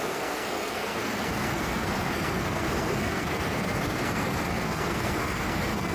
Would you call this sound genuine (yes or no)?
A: no